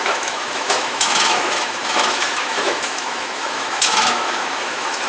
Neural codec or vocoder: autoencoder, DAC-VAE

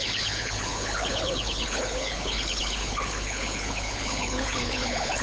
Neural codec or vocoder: codec, HILCodec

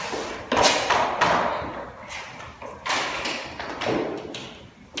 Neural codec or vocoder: none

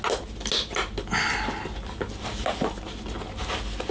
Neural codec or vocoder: none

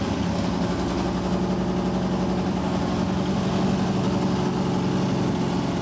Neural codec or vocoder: none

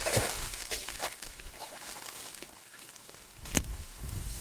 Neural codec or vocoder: codec, DAC